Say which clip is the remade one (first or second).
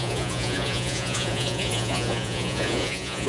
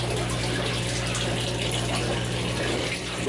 first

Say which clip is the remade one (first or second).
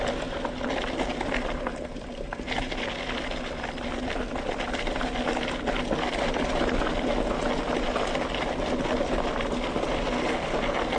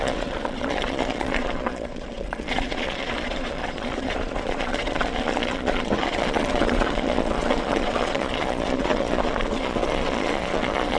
second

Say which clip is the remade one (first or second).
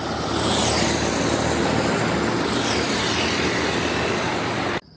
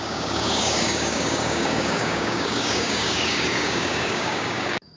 second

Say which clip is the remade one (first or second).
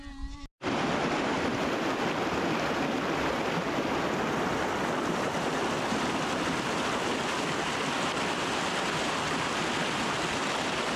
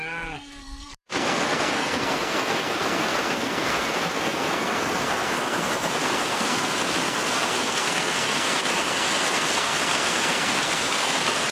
second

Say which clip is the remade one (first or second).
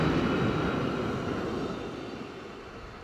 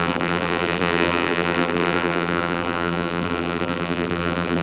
second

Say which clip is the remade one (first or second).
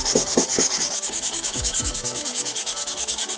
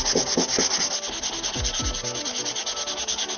first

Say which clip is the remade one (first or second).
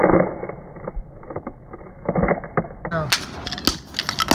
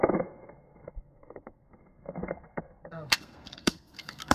second